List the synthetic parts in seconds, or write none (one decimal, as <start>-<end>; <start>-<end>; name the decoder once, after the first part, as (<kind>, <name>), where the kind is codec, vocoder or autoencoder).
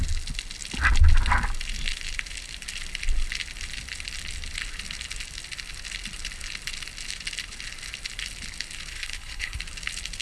8.9-9.6 (codec, HILCodec)